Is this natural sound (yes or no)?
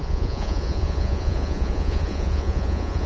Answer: no